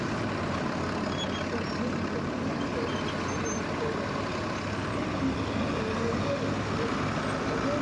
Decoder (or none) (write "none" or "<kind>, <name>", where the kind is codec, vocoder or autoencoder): none